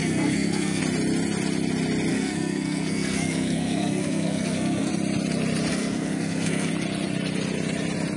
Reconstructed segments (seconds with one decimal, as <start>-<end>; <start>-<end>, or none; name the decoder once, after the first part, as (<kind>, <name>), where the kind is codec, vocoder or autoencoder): 0.0-0.8 (codec, SNAC); 2.1-4.9; 5.7-6.7